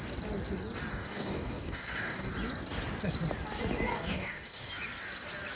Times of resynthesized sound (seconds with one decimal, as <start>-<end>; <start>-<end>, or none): 0.9-2.3; 3.9-4.7